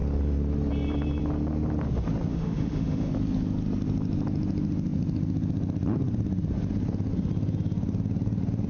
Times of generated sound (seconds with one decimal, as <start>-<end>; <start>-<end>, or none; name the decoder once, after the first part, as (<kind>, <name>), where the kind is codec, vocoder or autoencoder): 2.3-3.1 (autoencoder, DAC-VAE)